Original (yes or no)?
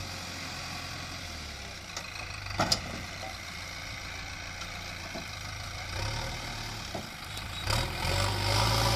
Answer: yes